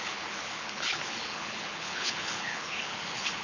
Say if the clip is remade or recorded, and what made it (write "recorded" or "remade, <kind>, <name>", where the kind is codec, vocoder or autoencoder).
remade, codec, HILCodec